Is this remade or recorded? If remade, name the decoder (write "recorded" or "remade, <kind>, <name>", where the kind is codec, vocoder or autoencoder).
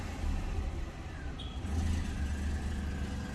recorded